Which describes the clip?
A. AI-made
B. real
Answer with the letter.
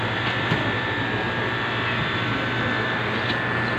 B